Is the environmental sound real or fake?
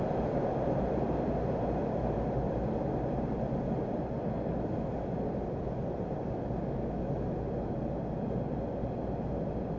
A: real